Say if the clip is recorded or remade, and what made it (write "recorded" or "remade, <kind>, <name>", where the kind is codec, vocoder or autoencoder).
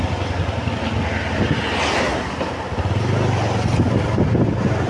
recorded